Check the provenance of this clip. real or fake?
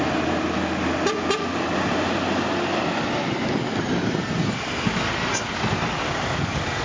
real